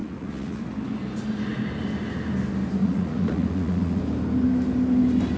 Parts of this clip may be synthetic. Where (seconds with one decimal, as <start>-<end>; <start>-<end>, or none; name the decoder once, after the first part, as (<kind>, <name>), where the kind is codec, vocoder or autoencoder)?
0.0-0.6 (vocoder, Vocos); 2.8-4.0